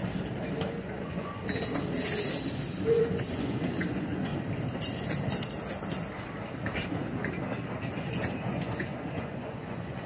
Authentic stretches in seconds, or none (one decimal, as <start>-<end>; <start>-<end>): 0.0-0.7; 1.4-2.9; 4.3-7.9